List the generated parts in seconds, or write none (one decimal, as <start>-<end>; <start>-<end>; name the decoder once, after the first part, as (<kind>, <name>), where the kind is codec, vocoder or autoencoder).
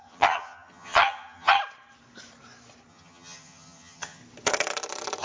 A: 0.0-1.6 (vocoder, HiFi-GAN); 2.9-4.2